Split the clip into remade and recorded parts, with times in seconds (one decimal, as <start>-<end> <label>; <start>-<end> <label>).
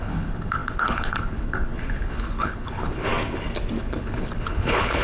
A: 0.0-3.1 remade; 3.1-3.8 recorded; 3.8-5.0 remade